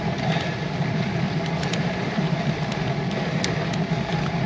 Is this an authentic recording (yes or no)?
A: no